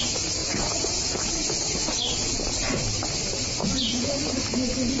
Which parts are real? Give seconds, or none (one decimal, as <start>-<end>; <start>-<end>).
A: 0.0-0.4; 2.9-3.6; 4.3-5.0